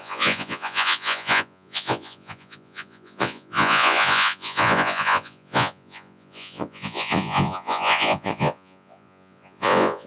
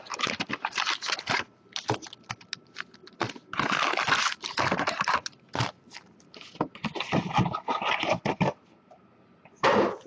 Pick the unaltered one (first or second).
second